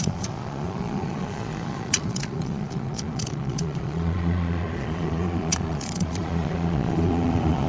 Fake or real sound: fake